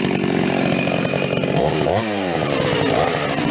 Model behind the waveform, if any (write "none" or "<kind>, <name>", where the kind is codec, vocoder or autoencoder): vocoder, BigVGAN v2